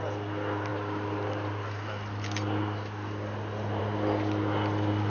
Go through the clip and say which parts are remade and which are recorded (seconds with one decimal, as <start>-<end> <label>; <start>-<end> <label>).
0.0-5.1 recorded